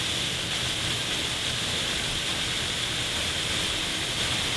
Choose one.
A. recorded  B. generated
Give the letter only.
A